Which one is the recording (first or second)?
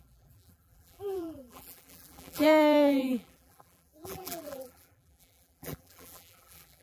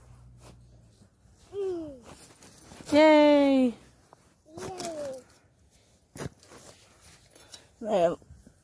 second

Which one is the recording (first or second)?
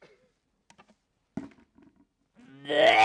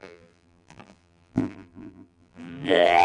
first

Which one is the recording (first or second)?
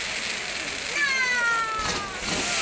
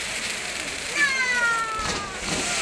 first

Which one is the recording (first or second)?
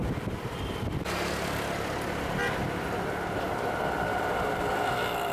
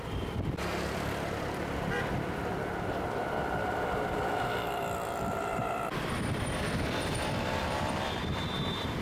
first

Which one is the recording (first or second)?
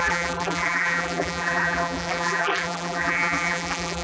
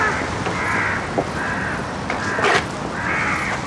second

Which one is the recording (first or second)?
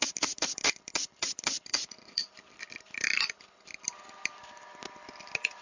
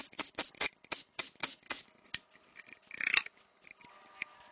second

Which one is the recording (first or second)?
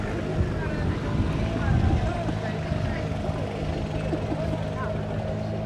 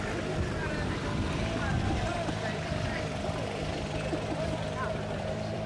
first